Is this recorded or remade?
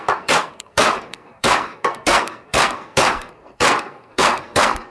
remade